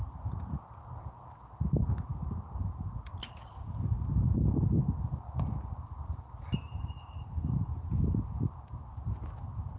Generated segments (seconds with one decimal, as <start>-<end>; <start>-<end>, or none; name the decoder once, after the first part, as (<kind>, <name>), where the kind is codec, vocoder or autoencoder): none